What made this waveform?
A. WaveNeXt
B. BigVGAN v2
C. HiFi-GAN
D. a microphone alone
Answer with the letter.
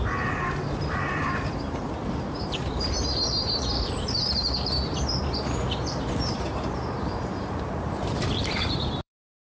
B